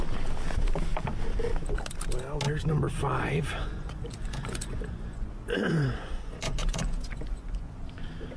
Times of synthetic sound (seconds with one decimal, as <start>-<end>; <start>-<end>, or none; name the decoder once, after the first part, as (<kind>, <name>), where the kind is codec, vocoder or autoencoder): 3.6-7.8 (vocoder, Vocos)